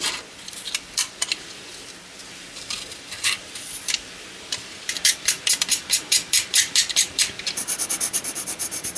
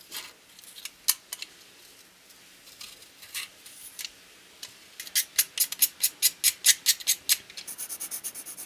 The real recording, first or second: second